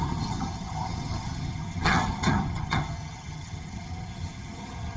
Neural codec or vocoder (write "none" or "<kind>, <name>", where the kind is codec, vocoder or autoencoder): vocoder, HiFi-GAN